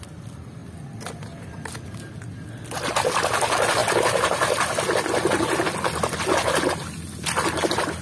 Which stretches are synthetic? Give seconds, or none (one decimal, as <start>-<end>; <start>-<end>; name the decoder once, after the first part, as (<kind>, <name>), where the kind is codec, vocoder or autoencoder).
0.6-2.3 (vocoder, BigVGAN v2); 3.8-5.2

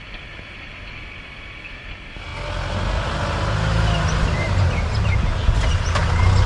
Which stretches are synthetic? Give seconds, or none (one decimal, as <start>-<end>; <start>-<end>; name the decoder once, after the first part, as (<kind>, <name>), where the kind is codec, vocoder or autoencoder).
none

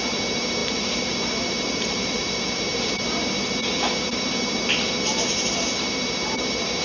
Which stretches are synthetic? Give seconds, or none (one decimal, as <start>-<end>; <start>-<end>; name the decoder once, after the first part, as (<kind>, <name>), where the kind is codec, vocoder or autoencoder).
0.6-2.6 (vocoder, BigVGAN v2)